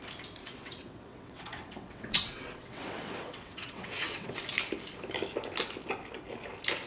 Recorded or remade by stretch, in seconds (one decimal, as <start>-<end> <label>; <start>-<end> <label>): 0.0-0.4 recorded; 0.4-4.4 remade; 4.4-6.9 recorded